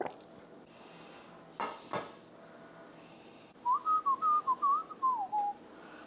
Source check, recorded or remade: recorded